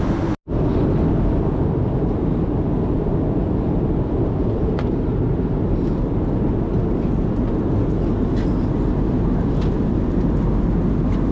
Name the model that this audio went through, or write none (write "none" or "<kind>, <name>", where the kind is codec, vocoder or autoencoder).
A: none